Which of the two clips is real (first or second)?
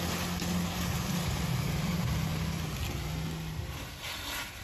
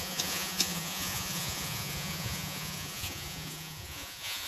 first